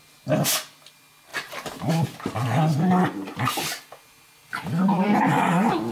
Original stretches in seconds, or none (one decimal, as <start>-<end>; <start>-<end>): 0.0-1.3; 1.9-3.2; 5.4-5.9